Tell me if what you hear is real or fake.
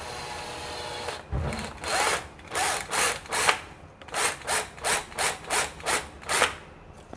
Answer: real